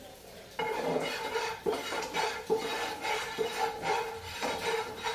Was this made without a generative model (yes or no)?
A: no